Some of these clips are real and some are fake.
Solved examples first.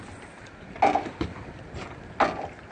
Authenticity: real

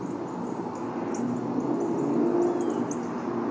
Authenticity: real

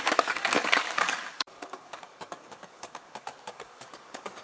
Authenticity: fake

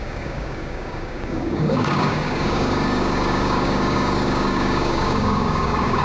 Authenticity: fake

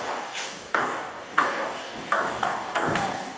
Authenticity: fake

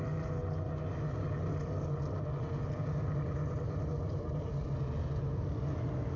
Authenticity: real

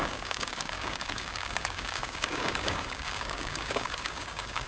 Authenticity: fake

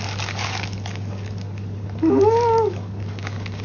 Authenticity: fake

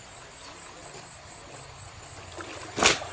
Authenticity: real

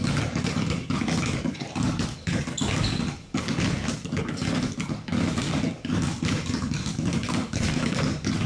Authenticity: fake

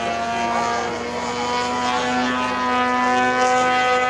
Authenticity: real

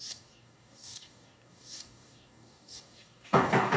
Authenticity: fake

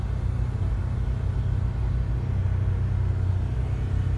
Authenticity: real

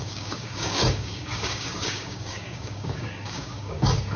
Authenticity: fake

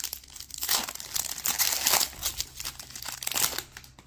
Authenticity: real